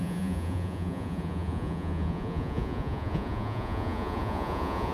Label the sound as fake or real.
fake